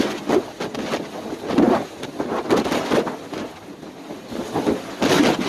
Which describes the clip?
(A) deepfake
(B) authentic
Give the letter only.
B